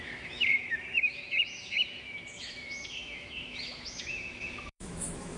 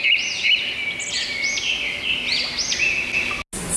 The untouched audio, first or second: second